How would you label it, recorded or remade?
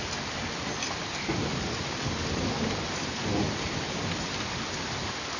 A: recorded